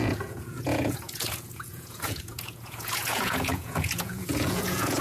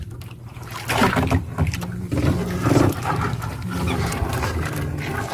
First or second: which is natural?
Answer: second